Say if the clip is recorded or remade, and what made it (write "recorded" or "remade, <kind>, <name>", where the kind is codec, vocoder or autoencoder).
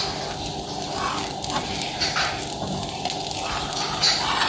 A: recorded